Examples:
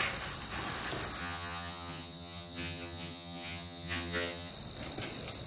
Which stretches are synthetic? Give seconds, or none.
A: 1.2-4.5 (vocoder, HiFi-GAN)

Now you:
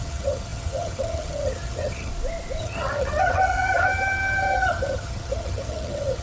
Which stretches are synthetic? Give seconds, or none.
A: 0.0-2.1 (vocoder, HiFi-GAN); 2.6-6.2

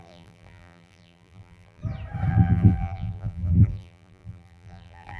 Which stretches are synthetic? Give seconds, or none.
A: 0.0-1.8 (vocoder, BigVGAN v2); 2.3-5.2

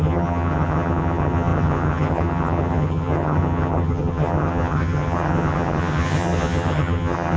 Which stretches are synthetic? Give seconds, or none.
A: 0.0-7.4 (vocoder, HiFi-GAN)

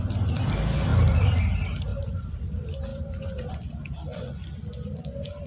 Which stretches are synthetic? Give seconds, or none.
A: 1.9-2.4 (vocoder, BigVGAN v2); 2.9-3.5